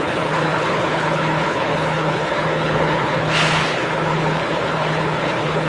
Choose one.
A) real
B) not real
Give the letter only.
B